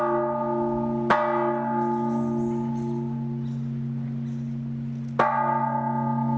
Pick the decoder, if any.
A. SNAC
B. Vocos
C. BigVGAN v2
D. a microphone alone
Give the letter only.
D